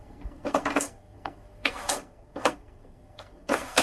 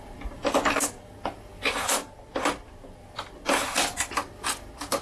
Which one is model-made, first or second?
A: first